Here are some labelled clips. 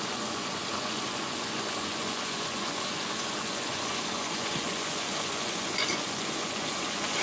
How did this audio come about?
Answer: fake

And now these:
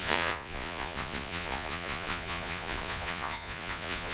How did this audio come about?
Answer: fake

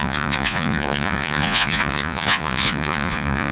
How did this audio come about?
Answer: fake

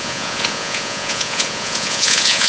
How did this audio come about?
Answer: fake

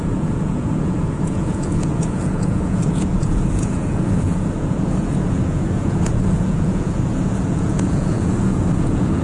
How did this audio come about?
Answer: fake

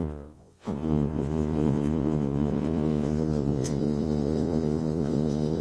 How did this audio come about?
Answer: fake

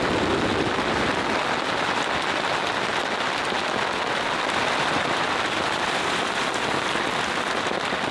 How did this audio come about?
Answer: real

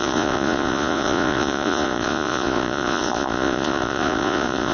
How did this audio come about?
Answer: fake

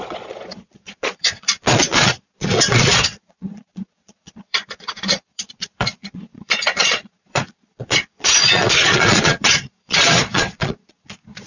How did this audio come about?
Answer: fake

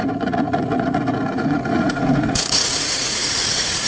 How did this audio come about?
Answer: fake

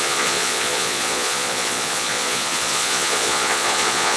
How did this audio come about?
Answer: fake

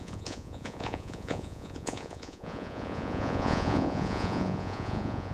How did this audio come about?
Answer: fake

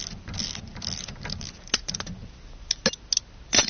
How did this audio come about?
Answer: real